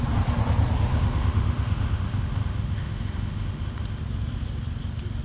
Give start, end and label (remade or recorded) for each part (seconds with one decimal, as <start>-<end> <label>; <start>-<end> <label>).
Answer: 0.0-0.9 recorded; 0.9-4.0 remade; 4.0-5.2 recorded